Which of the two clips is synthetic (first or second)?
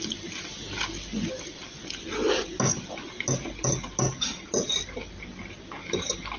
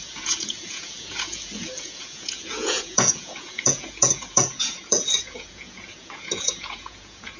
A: second